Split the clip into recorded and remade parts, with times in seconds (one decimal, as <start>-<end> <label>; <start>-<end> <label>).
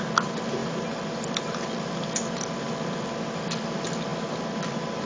0.0-0.6 recorded; 0.6-3.0 remade; 3.0-5.1 recorded